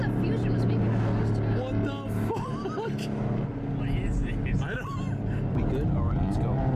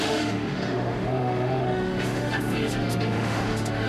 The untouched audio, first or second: first